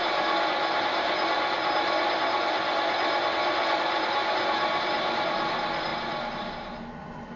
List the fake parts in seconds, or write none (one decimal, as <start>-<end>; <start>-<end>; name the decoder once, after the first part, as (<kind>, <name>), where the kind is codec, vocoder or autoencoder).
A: none